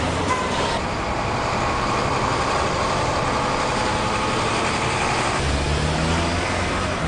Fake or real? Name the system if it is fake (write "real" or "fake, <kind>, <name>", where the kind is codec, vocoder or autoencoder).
real